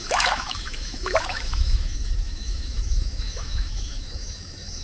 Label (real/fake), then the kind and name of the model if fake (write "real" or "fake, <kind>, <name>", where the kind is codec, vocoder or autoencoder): fake, autoencoder, DAC-VAE